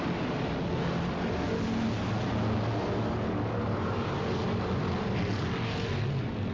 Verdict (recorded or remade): recorded